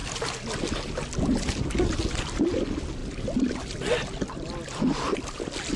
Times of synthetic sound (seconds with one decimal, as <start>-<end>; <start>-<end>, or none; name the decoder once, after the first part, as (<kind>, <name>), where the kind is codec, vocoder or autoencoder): none